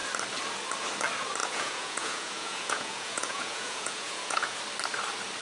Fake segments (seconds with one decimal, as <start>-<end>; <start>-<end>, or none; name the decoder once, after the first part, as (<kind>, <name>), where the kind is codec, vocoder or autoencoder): 1.4-4.6 (vocoder, Vocos)